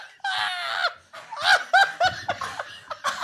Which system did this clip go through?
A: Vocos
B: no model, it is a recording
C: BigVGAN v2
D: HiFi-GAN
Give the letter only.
B